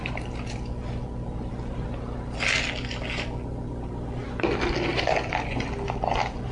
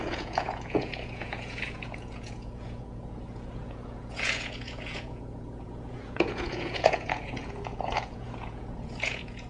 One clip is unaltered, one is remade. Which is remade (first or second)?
second